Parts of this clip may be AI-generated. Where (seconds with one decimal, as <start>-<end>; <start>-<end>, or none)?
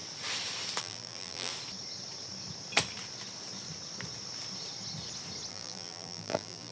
0.8-1.5; 5.5-6.7